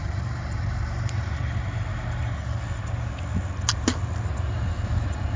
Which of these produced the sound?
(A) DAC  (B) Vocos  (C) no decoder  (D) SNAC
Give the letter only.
C